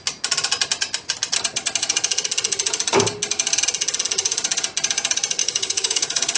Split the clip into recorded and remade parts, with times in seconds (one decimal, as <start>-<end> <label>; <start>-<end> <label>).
0.0-5.4 recorded; 5.4-6.4 remade